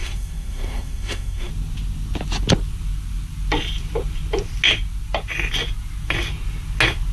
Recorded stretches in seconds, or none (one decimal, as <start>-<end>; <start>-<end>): 1.5-7.1